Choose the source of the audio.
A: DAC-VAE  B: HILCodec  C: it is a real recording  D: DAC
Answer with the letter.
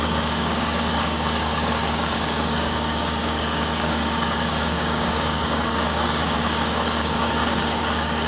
D